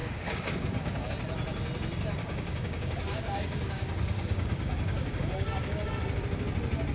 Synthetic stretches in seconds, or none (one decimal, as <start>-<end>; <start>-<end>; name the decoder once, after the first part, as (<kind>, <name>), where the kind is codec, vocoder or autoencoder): 0.0-1.1 (codec, DAC); 2.2-5.9